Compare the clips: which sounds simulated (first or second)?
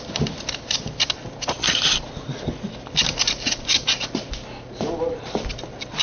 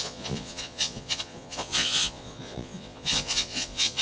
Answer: second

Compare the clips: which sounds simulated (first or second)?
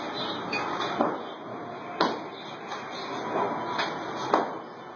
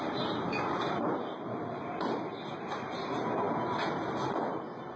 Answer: second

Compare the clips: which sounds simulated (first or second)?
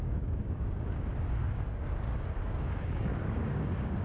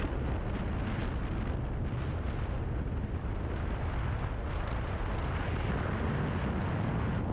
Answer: first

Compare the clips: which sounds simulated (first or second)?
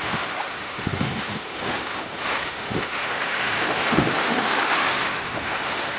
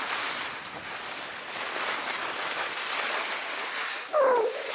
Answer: first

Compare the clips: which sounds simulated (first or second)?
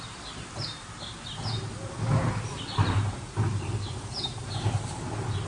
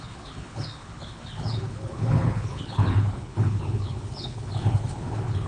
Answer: second